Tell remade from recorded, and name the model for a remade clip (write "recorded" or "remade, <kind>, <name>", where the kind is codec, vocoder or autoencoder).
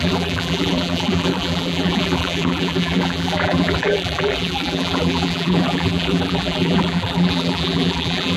remade, vocoder, BigVGAN v2